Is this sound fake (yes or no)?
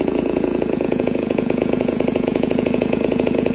yes